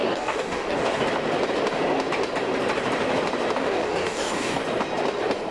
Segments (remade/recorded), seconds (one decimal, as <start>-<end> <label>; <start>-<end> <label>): 0.0-1.0 remade; 1.0-3.6 recorded; 3.6-4.6 remade; 4.6-5.5 recorded